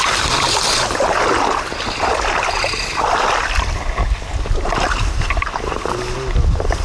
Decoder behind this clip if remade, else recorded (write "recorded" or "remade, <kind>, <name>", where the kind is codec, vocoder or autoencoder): recorded